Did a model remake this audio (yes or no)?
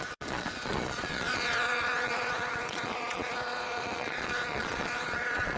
yes